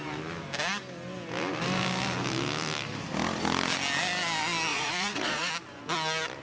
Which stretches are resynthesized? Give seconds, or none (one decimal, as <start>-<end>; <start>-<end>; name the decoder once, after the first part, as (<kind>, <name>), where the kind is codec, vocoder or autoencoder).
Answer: 4.7-5.5 (vocoder, Vocos)